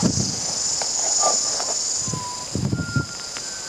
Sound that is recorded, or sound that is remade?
recorded